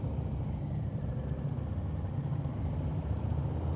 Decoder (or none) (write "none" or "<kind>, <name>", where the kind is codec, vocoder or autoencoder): none